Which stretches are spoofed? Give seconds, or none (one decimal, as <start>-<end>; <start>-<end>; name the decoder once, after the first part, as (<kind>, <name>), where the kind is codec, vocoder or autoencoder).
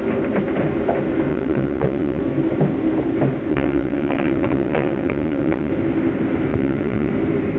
1.3-2.2 (vocoder, WaveNeXt); 3.5-5.7; 6.5-7.1